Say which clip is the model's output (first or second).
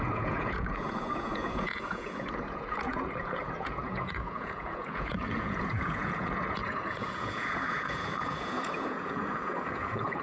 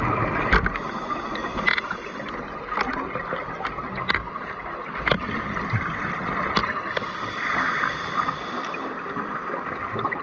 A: first